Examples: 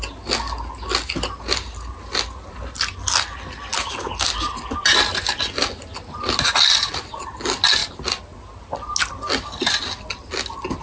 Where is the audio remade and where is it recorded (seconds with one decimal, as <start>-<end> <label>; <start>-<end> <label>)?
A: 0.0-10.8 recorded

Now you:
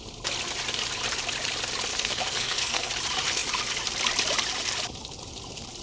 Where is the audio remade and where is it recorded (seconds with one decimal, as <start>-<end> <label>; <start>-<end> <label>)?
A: 0.0-1.9 recorded; 1.9-2.9 remade; 2.9-5.8 recorded

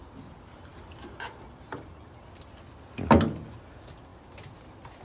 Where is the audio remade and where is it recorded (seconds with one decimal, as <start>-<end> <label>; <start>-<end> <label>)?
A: 0.0-5.0 recorded